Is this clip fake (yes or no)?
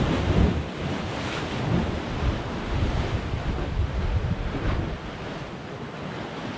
no